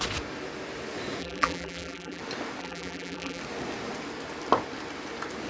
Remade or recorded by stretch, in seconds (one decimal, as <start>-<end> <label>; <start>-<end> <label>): 0.0-1.2 recorded; 1.2-2.2 remade; 2.2-2.6 recorded; 2.6-3.4 remade; 3.4-5.5 recorded